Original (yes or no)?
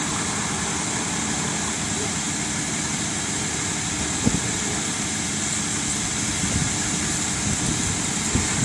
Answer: yes